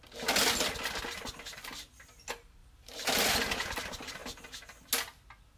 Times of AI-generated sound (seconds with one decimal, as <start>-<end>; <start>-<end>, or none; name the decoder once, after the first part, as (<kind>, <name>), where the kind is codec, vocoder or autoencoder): 1.5-2.0 (vocoder, BigVGAN v2); 2.6-3.8